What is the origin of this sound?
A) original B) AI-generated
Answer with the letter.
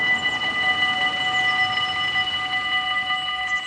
A